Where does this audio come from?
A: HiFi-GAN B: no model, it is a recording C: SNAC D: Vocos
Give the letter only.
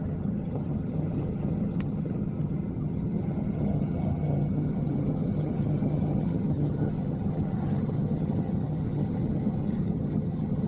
A